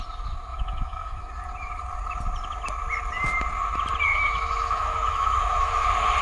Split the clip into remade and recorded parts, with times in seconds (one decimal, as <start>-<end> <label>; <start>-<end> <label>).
0.0-0.5 recorded; 0.5-1.3 remade; 1.3-4.1 recorded; 4.1-5.7 remade; 5.7-6.2 recorded